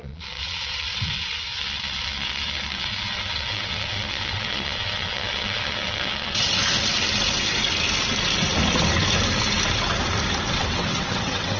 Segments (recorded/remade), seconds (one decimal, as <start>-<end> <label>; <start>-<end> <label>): 0.0-6.6 remade; 6.6-10.5 recorded; 10.5-11.6 remade